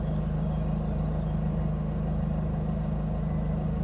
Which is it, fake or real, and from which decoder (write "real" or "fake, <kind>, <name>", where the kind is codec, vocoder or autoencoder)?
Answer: real